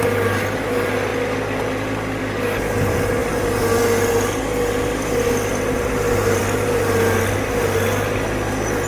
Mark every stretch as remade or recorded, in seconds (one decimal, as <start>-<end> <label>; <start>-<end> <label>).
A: 0.0-5.5 recorded; 5.5-6.4 remade; 6.4-8.9 recorded